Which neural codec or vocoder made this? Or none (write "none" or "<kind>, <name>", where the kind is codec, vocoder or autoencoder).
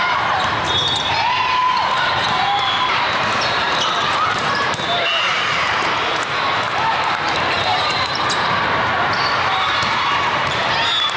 vocoder, BigVGAN v2